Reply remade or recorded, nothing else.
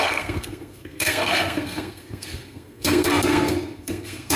remade